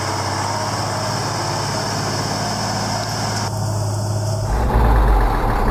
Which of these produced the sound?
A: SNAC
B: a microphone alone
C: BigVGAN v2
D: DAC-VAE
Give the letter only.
B